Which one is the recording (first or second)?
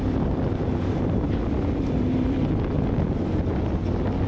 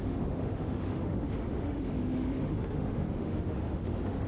first